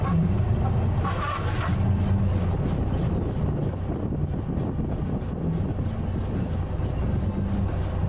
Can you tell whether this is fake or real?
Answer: real